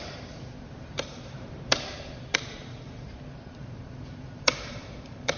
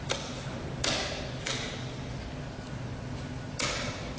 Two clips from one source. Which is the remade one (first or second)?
first